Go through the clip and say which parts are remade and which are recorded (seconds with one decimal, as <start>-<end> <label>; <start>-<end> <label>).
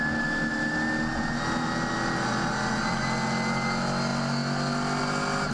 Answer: 0.0-5.5 recorded